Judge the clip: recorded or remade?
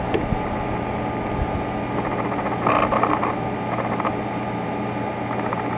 recorded